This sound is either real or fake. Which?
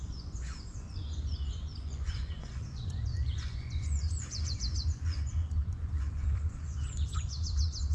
fake